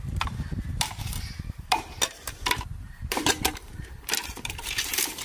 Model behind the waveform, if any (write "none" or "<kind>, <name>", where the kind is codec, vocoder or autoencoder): vocoder, BigVGAN v2